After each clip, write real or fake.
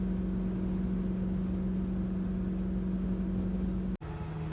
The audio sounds real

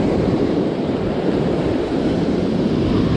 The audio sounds fake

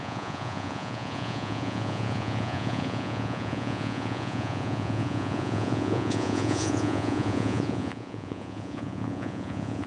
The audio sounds fake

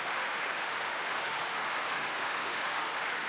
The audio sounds fake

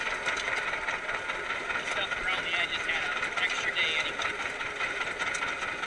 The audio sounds real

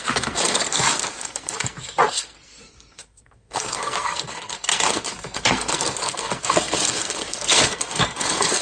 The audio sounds fake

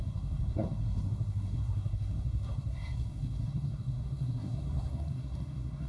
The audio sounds fake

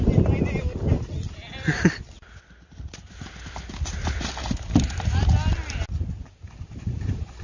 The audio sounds real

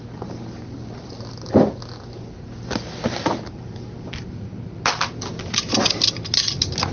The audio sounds real